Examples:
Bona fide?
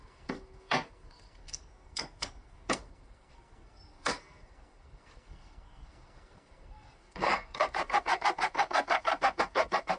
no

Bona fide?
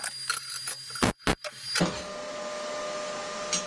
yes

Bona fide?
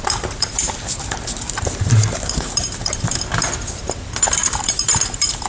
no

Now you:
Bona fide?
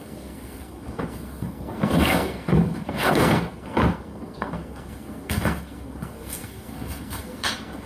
no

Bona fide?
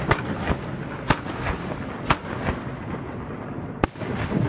yes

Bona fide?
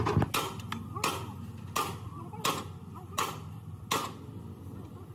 yes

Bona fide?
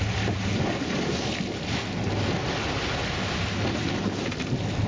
yes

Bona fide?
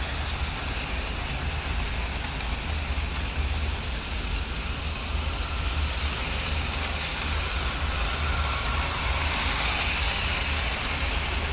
yes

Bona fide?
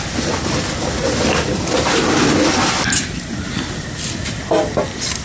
yes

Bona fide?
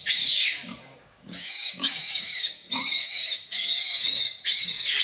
no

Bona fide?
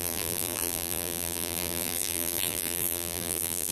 no